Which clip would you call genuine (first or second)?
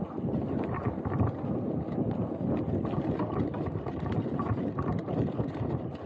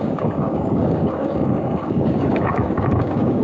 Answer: first